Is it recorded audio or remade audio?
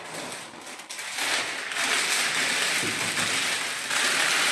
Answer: recorded